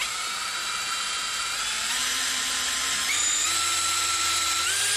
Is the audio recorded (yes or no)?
no